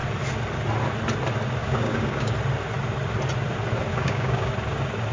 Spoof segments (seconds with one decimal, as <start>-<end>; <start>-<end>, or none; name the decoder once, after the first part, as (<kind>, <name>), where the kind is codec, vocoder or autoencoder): 1.6-2.3 (codec, DAC); 3.9-4.5